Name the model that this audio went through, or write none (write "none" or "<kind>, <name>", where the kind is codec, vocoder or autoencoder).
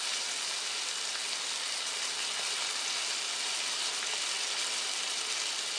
none